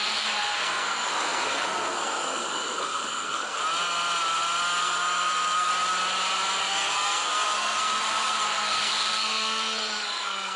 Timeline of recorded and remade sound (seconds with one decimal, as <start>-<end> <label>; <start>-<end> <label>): 0.0-3.6 remade; 3.6-4.8 recorded; 4.8-5.7 remade; 5.7-6.6 recorded; 6.6-10.6 remade